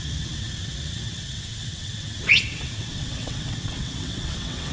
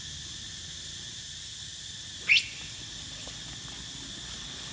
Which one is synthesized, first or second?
first